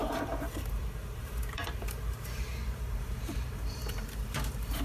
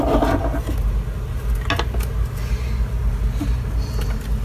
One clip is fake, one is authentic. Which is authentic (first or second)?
second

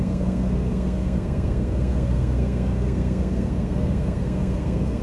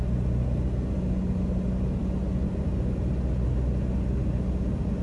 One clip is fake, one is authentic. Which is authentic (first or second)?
second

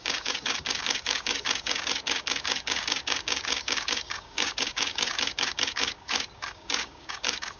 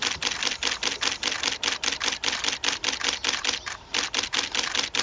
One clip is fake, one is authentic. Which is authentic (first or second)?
second